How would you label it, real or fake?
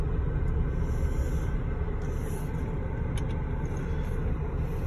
real